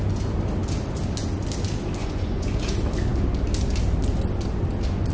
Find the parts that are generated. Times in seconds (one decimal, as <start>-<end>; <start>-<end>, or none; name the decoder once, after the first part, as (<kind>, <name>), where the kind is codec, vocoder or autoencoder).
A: 2.0-2.6 (vocoder, Vocos)